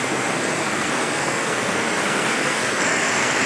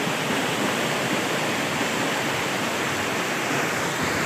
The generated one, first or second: first